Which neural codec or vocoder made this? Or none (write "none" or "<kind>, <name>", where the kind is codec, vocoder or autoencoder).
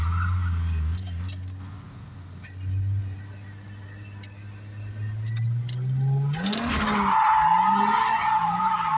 none